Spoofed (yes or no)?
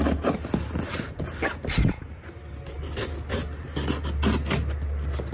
no